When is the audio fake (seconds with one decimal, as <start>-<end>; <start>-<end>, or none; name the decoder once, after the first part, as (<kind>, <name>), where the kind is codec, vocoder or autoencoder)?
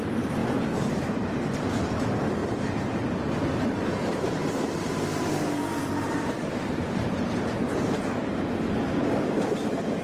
0.4-1.9 (vocoder, BigVGAN v2); 2.4-3.1; 4.0-8.4